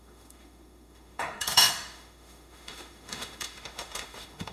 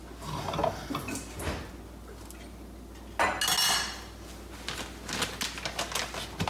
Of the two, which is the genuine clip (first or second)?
second